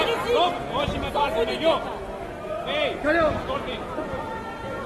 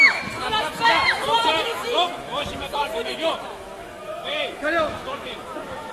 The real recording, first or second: first